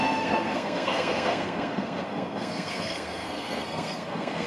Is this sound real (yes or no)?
no